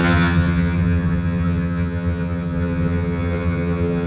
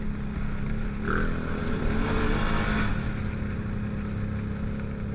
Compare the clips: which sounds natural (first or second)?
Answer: second